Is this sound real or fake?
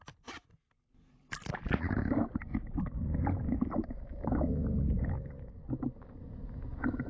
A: real